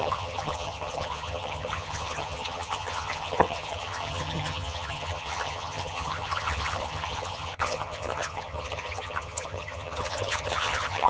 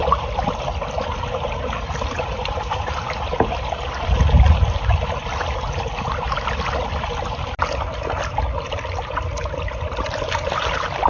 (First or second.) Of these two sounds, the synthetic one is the first